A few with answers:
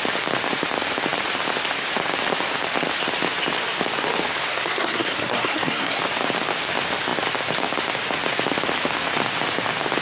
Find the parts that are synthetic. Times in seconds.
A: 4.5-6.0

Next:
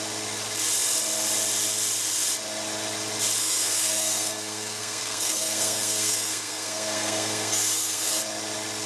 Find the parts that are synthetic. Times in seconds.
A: 3.4-8.2

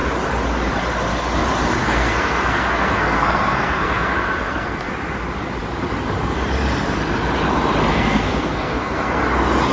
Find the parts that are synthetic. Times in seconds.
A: 1.8-4.9; 7.9-9.2

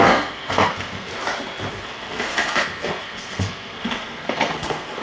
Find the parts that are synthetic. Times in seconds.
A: 0.0-1.1; 1.7-5.0

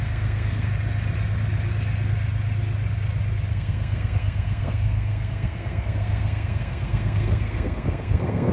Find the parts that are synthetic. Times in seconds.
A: 0.0-0.7; 3.5-8.5

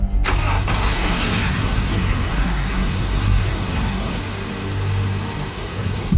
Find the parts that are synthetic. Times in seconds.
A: 0.5-4.2; 5.5-6.2

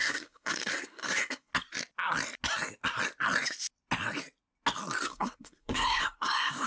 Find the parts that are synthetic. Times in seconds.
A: 0.0-1.5; 5.0-6.7